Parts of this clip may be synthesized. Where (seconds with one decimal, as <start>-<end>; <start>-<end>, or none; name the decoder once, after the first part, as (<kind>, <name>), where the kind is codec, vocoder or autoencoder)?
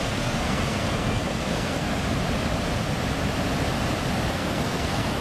0.0-2.0 (codec, SNAC); 4.3-5.2